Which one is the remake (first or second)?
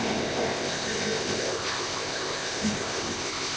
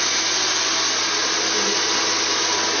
first